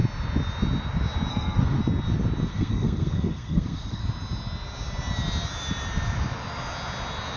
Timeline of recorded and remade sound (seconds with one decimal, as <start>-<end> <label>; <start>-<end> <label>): 0.0-1.3 recorded; 1.3-1.8 remade; 1.8-2.5 recorded; 2.5-4.0 remade; 4.0-7.4 recorded